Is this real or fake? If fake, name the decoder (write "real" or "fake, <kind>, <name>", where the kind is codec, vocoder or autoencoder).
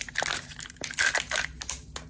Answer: real